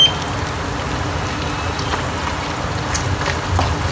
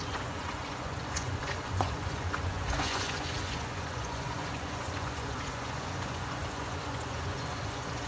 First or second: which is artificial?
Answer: second